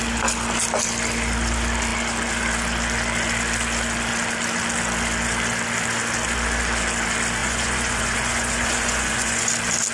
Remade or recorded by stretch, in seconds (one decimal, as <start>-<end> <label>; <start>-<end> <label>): 0.0-7.4 recorded; 7.4-9.5 remade; 9.5-9.9 recorded